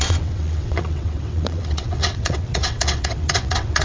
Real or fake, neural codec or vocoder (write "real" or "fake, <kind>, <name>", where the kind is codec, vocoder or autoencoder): fake, vocoder, WaveNeXt